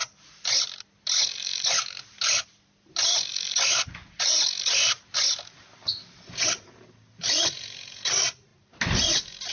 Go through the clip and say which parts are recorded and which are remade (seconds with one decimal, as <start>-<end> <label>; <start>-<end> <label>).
0.0-9.5 recorded